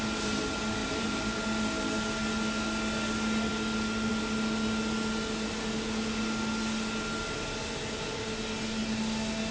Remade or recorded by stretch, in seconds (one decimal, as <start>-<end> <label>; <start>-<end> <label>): 0.0-0.8 recorded; 0.8-1.4 remade; 1.4-9.5 recorded